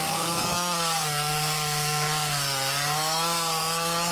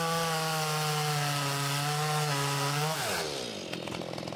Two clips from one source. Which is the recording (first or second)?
second